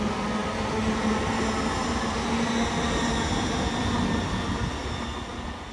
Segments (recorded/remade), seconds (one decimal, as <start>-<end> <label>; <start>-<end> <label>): 0.0-5.7 recorded

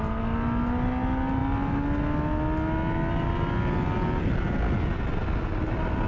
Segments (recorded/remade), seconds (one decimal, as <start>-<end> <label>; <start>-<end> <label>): 0.0-6.1 recorded

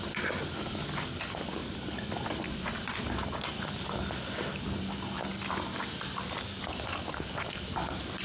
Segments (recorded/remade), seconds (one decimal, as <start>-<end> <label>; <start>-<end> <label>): 0.0-1.6 recorded; 1.6-4.6 remade; 4.6-5.2 recorded; 5.2-7.3 remade; 7.3-8.2 recorded

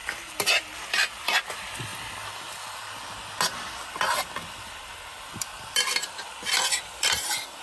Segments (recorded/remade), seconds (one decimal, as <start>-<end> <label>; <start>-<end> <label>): 0.0-1.5 recorded; 1.5-1.9 remade; 1.9-6.5 recorded; 6.5-7.6 remade

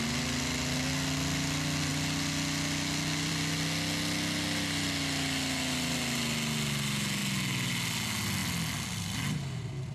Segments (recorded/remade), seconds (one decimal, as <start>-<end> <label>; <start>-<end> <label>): 0.0-9.9 recorded

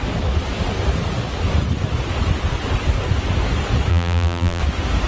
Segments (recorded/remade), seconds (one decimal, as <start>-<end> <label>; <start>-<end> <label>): 0.0-3.9 recorded; 3.9-4.6 remade; 4.6-5.1 recorded

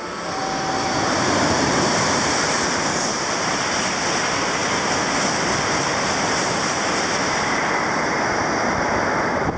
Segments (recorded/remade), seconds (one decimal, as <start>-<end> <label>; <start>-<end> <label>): 0.0-0.4 recorded; 0.4-3.8 remade; 3.8-9.6 recorded

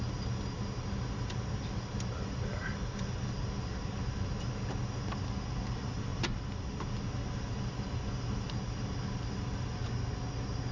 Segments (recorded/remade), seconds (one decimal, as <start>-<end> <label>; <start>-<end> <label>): 0.0-6.1 recorded; 6.1-7.1 remade; 7.1-10.7 recorded